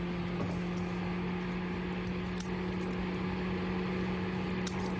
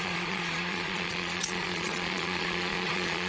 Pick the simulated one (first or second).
second